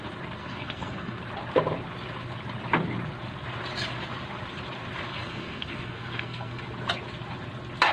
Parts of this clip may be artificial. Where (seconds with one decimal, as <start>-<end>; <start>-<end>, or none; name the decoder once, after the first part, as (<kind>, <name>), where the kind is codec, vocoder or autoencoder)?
0.4-1.2 (codec, SNAC); 5.1-6.6

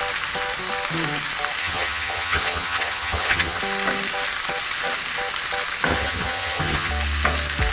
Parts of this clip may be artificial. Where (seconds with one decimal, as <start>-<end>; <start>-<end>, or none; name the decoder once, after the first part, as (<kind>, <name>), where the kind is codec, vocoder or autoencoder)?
1.6-3.6 (vocoder, HiFi-GAN); 5.9-6.9

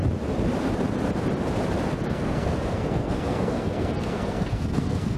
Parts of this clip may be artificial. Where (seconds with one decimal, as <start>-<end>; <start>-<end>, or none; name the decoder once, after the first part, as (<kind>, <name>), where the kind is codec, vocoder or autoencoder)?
1.9-5.2 (codec, SNAC)

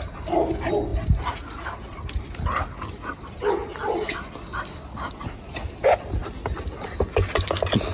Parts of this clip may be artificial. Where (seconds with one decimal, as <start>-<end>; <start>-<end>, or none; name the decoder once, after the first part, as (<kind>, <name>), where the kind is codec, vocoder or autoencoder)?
none

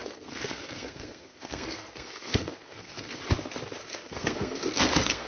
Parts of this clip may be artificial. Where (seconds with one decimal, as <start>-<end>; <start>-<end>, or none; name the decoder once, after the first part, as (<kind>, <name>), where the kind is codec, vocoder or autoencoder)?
0.0-3.2 (codec, SNAC); 3.8-5.3